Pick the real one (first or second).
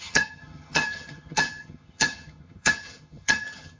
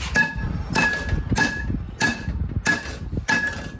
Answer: second